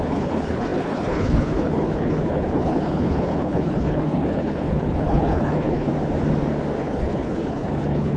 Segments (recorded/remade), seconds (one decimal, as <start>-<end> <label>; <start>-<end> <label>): 0.0-5.9 remade; 5.9-6.8 recorded; 6.8-8.2 remade